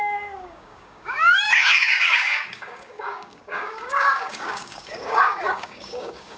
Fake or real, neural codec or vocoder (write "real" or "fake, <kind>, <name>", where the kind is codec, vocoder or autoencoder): fake, codec, DAC